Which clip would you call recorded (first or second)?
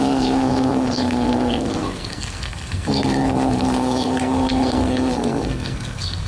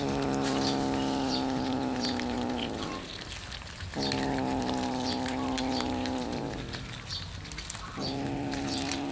second